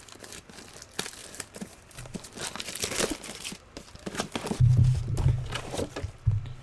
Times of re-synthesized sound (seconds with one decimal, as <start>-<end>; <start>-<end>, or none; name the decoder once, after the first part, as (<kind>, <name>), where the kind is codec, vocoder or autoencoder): none